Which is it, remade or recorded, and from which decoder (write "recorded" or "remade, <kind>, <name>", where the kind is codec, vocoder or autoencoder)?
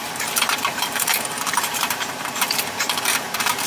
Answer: remade, vocoder, BigVGAN v2